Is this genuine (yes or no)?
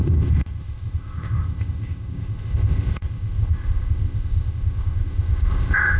no